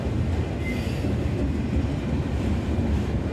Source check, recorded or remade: recorded